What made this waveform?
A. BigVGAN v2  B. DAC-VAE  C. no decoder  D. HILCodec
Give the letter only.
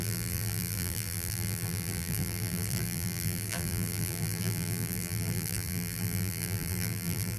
A